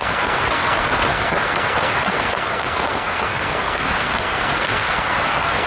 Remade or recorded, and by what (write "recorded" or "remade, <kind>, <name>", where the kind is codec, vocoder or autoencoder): remade, codec, SNAC